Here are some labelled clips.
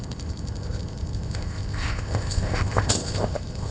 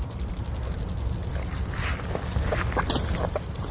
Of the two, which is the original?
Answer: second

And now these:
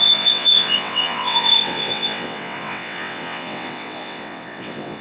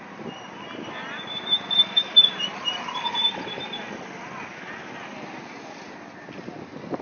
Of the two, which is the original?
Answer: second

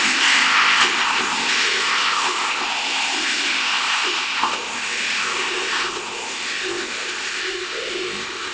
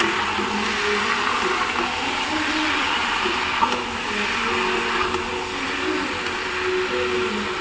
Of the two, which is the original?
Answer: second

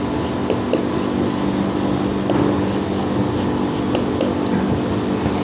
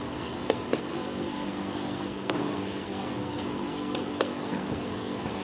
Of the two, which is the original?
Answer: first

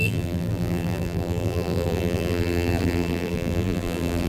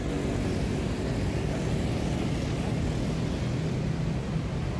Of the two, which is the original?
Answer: second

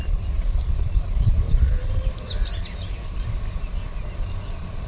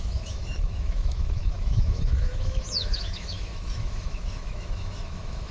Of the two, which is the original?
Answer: first